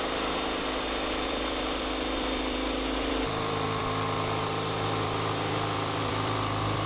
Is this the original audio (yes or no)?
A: no